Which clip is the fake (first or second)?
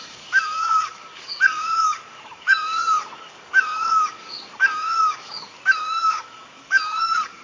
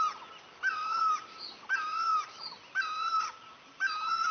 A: first